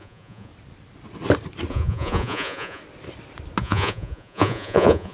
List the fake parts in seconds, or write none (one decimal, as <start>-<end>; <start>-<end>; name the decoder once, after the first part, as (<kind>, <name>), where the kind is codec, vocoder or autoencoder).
0.0-0.5 (vocoder, Vocos); 1.7-2.8; 3.6-5.1